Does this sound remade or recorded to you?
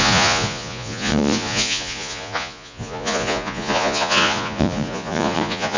remade